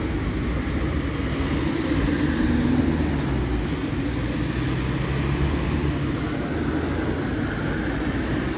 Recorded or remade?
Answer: recorded